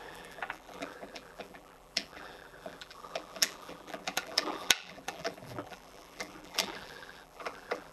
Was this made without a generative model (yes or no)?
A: no